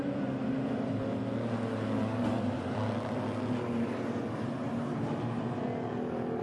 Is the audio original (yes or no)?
yes